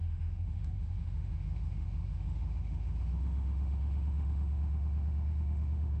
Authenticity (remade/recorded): remade